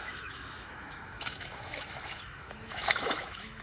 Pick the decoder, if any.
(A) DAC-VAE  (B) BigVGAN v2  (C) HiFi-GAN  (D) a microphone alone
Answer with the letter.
A